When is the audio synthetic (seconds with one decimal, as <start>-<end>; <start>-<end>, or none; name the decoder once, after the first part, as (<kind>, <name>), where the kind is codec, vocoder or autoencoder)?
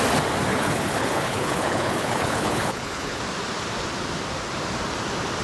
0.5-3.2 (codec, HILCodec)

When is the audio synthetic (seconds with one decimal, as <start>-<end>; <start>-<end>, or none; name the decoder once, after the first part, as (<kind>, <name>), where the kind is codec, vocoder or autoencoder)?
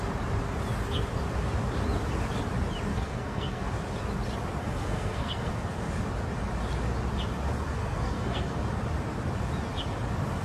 2.9-3.6 (codec, SNAC); 4.6-5.5; 7.8-8.6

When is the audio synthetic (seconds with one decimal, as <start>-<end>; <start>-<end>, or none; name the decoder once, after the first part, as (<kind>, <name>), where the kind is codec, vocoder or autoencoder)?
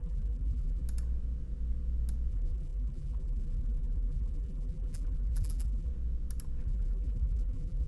0.0-0.8 (vocoder, BigVGAN v2); 2.3-5.9; 6.6-7.9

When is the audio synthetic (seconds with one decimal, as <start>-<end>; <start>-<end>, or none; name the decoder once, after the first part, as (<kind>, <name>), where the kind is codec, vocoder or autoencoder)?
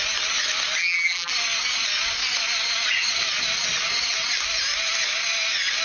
0.8-1.3 (vocoder, BigVGAN v2)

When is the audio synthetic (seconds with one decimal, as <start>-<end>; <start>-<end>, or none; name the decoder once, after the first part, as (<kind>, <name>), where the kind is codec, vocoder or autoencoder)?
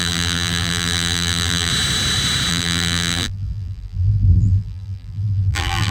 0.0-1.7 (vocoder, BigVGAN v2); 2.5-5.9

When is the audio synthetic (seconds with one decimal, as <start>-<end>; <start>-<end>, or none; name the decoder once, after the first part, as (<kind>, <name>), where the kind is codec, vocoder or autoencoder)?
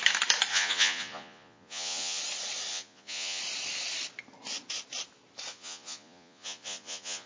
0.5-2.2 (vocoder, Vocos); 2.7-3.4; 5.5-7.3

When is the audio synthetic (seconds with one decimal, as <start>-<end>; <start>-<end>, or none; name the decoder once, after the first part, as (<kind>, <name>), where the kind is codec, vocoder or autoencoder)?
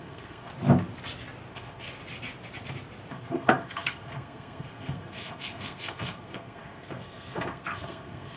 0.0-0.5 (codec, SNAC); 1.5-2.0; 3.1-8.4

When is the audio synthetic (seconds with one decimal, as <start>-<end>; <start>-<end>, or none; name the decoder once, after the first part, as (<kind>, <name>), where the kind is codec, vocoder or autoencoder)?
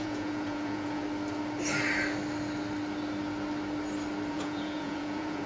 0.0-1.0 (vocoder, Vocos); 4.3-5.5